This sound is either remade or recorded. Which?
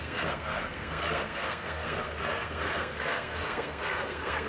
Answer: remade